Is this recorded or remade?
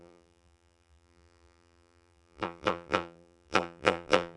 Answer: remade